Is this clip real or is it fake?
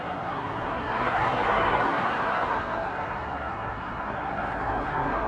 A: fake